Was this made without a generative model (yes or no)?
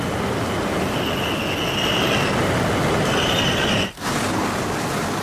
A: yes